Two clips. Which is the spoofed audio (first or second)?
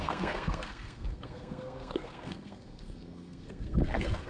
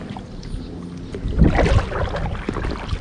first